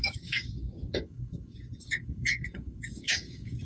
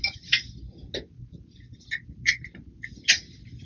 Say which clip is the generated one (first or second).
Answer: first